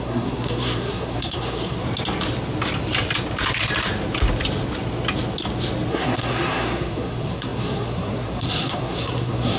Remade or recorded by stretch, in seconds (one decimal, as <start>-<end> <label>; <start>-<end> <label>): 0.0-1.8 remade; 1.8-5.9 recorded; 5.9-9.6 remade